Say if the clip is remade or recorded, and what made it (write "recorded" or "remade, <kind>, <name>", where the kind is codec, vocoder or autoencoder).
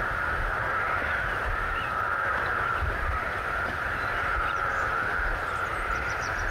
remade, vocoder, BigVGAN v2